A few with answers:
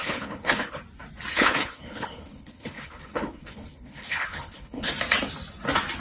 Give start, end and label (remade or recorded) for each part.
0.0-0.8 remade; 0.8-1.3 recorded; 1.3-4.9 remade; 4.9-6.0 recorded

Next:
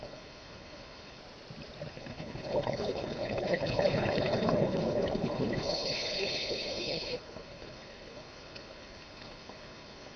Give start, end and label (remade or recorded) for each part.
0.0-1.2 remade; 1.2-1.9 recorded; 1.9-10.2 remade

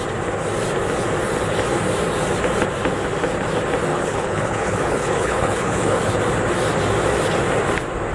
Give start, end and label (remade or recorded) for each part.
0.0-3.9 recorded; 3.9-6.1 remade; 6.1-8.1 recorded

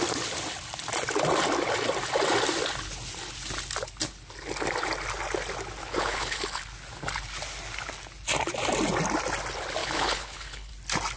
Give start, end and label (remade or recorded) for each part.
0.0-5.8 recorded; 5.8-6.6 remade; 6.6-9.8 recorded; 9.8-10.7 remade; 10.7-11.2 recorded